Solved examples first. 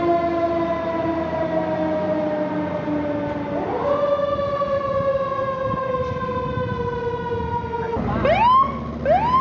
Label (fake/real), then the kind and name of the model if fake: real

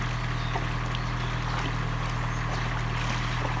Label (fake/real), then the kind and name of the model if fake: real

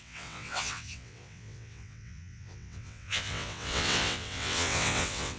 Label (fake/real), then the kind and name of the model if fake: fake, vocoder, WaveNeXt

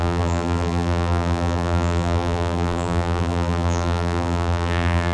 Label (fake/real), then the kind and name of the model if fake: fake, vocoder, BigVGAN v2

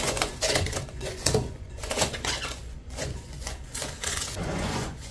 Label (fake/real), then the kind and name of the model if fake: fake, vocoder, Vocos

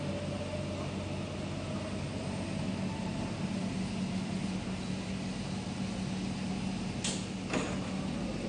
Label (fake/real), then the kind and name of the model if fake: real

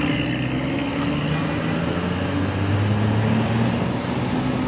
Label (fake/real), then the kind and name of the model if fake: real